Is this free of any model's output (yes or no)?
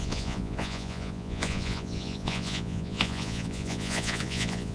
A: no